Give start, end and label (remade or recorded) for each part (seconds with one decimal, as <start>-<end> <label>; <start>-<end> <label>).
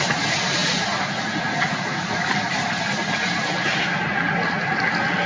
0.0-5.3 recorded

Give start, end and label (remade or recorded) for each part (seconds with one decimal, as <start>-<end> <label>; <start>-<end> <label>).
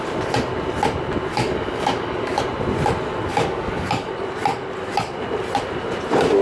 0.0-1.3 recorded; 1.3-2.4 remade; 2.4-3.3 recorded; 3.3-4.1 remade; 4.1-6.4 recorded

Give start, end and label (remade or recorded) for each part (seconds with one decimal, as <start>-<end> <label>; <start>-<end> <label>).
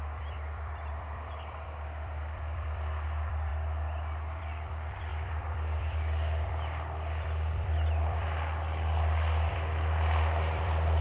0.0-3.5 remade; 3.5-4.4 recorded; 4.4-11.0 remade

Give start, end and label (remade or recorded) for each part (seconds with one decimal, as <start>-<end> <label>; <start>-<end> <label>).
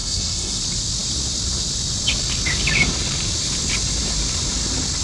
0.0-0.6 remade; 0.6-5.0 recorded